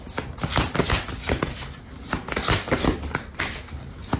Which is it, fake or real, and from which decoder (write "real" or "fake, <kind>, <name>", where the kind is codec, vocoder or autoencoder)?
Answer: real